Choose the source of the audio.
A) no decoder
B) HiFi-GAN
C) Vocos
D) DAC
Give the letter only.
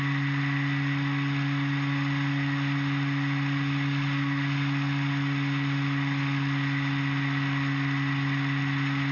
A